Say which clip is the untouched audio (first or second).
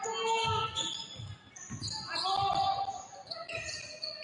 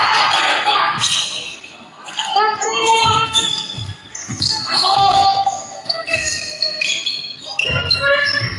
first